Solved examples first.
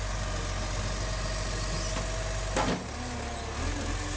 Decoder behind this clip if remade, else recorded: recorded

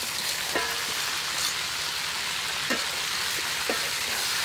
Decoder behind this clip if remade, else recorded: recorded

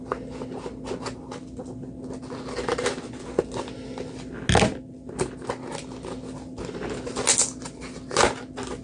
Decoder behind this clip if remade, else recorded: recorded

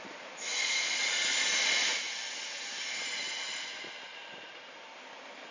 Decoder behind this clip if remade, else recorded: recorded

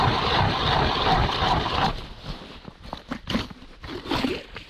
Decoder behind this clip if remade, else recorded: remade, vocoder, BigVGAN v2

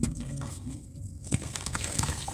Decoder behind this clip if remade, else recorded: remade, codec, SNAC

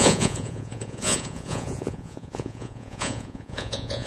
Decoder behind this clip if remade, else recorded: remade, vocoder, Vocos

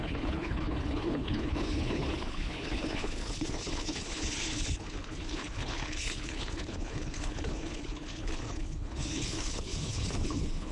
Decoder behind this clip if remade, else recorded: remade, codec, HILCodec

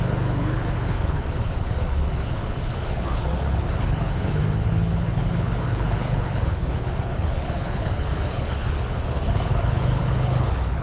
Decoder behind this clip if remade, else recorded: remade, codec, HILCodec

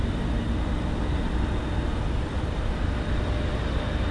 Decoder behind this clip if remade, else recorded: recorded